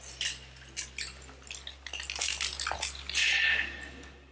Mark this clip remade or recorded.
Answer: recorded